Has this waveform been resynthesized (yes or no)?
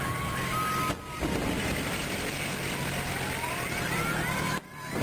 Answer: no